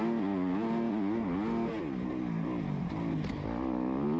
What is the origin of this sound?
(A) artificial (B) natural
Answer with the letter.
B